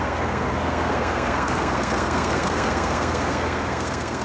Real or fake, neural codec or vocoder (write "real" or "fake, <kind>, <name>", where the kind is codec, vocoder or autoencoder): fake, codec, SNAC